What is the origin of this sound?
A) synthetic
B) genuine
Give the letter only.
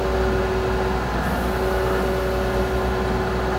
B